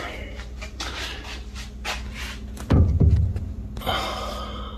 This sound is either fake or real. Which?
real